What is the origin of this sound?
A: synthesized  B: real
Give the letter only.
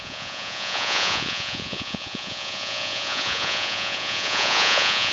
A